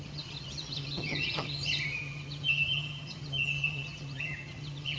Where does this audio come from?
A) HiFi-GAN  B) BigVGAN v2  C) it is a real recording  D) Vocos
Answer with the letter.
A